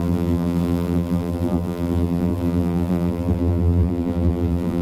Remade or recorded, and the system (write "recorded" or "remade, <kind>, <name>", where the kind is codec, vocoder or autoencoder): remade, vocoder, BigVGAN v2